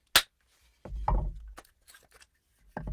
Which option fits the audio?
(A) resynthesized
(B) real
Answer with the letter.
B